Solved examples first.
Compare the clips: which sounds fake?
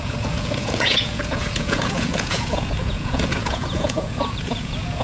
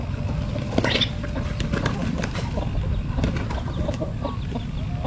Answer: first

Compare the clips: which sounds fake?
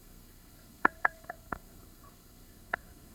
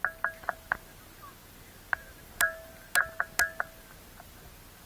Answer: first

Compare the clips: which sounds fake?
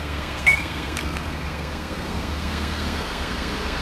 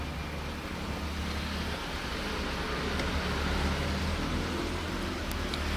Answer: first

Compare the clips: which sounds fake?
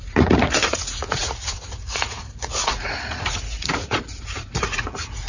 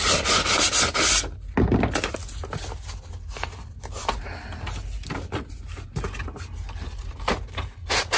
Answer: first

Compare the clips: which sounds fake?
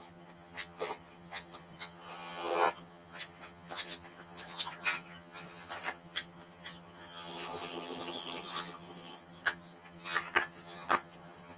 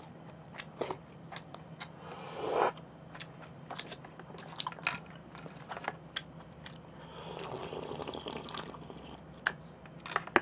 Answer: first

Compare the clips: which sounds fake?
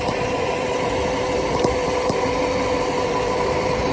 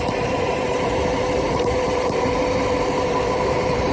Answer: second